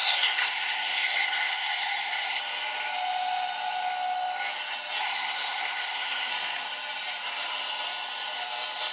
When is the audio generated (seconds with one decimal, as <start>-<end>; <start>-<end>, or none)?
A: 0.0-2.4; 5.0-6.3